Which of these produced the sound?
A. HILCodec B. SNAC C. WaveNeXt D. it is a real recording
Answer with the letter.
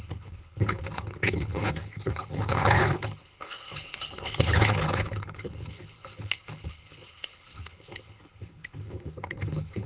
A